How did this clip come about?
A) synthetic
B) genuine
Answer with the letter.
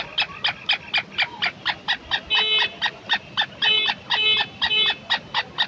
B